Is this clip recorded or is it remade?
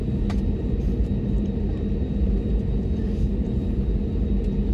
remade